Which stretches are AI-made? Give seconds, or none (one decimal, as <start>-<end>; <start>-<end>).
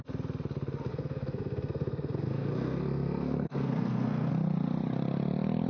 0.9-4.3